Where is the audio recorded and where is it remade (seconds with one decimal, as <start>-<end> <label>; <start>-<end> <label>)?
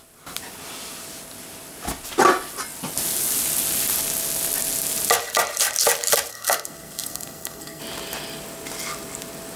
0.0-6.3 recorded; 6.3-7.8 remade; 7.8-9.6 recorded